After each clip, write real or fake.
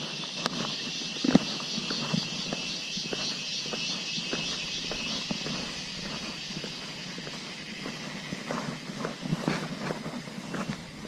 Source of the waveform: real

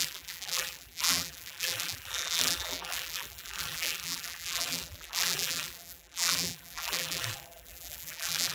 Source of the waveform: fake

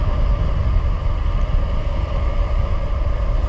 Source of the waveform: real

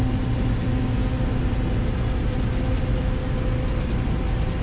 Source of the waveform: real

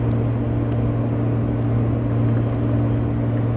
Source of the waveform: real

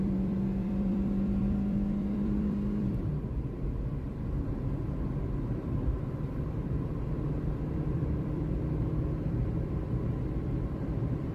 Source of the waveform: fake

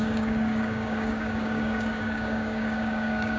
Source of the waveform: fake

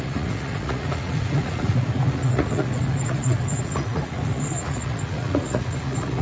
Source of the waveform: fake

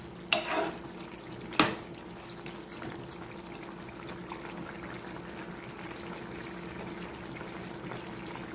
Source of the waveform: real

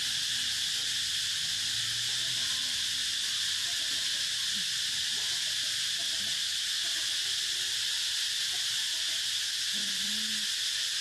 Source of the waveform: real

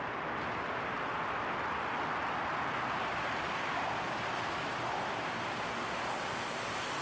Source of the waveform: real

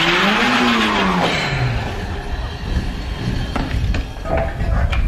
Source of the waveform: real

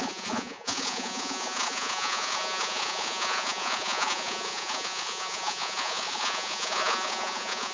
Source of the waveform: fake